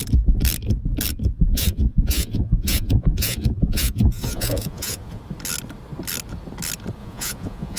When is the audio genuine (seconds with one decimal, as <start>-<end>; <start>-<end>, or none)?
0.0-1.5; 5.2-7.0